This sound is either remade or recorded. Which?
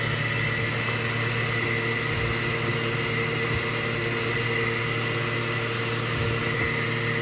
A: recorded